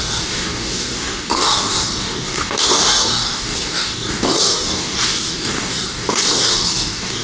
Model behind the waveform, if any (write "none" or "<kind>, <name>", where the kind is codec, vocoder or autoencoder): codec, DAC